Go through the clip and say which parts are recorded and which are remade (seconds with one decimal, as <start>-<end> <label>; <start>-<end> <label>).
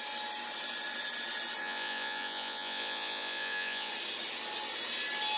0.0-1.6 recorded; 1.6-3.9 remade; 3.9-5.4 recorded